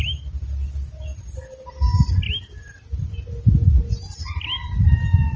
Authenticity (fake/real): real